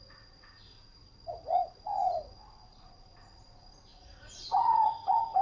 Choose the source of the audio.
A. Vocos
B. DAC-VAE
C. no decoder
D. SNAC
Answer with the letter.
A